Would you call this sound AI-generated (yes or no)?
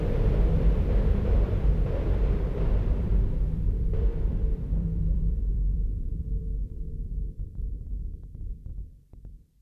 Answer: yes